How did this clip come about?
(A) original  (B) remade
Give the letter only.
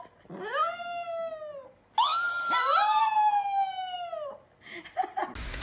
A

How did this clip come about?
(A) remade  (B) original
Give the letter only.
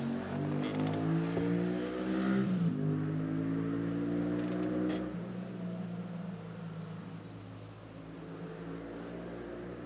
B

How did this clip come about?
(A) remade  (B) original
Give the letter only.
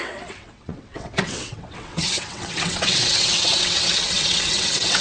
A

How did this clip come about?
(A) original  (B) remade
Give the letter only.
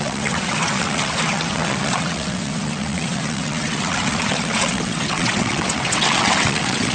B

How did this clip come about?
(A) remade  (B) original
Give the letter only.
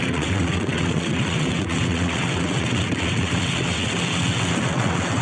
A